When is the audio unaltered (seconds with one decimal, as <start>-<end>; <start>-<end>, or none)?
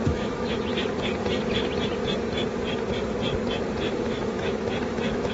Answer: 0.7-3.9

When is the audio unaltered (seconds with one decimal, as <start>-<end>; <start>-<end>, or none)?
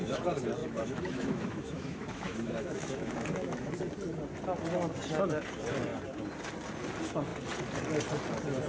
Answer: 0.0-0.6; 3.8-8.7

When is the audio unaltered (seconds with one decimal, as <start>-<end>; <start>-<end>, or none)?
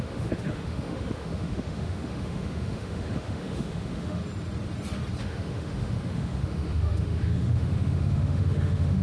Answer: 4.2-5.2